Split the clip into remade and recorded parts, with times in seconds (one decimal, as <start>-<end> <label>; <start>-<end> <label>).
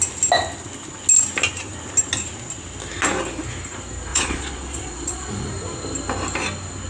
0.0-4.1 recorded; 4.1-5.5 remade; 5.5-6.9 recorded